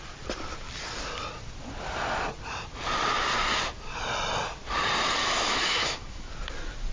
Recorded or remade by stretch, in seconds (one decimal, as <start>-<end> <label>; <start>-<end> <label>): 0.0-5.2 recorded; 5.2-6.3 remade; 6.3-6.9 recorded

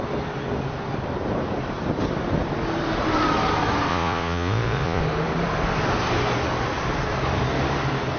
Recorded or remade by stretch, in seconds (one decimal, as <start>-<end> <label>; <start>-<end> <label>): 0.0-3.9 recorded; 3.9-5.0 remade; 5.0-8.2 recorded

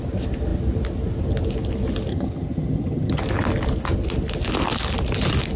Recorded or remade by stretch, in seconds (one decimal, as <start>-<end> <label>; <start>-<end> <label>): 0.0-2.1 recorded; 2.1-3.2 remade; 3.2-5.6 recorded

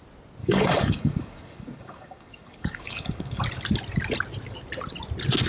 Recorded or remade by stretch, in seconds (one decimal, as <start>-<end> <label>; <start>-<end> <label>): 0.0-0.4 recorded; 0.4-3.4 remade; 3.4-5.5 recorded

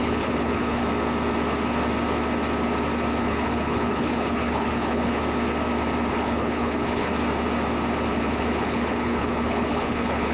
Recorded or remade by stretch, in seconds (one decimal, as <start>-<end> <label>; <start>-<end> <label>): 0.0-0.8 remade; 0.8-3.2 recorded; 3.2-5.2 remade; 5.2-6.1 recorded; 6.1-7.1 remade; 7.1-8.1 recorded; 8.1-10.3 remade